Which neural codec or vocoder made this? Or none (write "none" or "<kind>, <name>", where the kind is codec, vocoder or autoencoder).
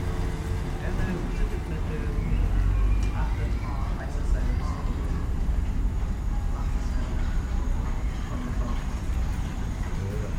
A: none